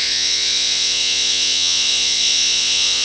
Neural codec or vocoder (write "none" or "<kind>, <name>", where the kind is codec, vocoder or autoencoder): vocoder, Vocos